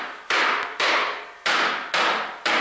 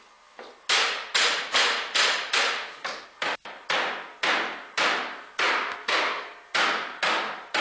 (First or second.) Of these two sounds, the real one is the second